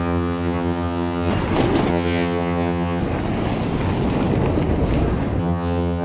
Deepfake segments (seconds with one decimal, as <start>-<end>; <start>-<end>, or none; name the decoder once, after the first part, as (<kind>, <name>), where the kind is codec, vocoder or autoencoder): 0.0-1.3 (vocoder, HiFi-GAN); 1.9-3.0; 5.4-6.0